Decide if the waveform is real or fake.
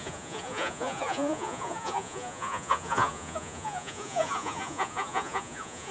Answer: fake